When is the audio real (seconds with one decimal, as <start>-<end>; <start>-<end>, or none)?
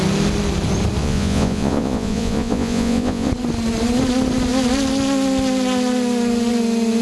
0.0-1.0; 3.3-7.0